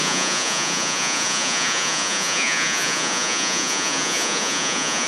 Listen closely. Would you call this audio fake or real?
fake